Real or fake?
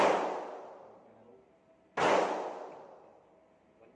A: real